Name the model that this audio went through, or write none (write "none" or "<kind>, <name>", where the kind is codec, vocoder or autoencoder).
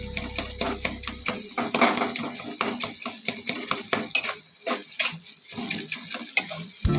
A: none